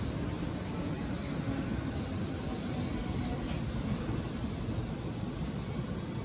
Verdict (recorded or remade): recorded